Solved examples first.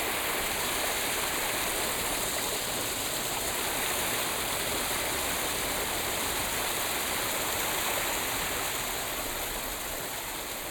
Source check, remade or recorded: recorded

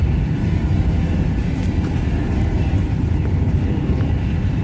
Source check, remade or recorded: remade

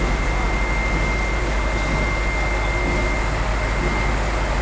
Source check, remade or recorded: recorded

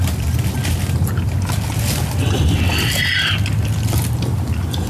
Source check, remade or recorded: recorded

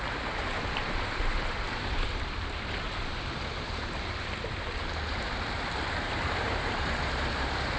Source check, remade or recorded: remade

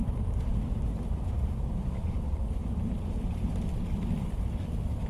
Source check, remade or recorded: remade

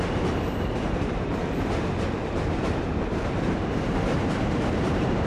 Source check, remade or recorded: remade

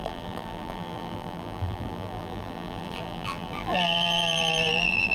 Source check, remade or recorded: remade